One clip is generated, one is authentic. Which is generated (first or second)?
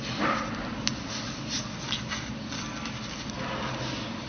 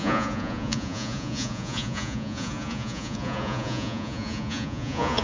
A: second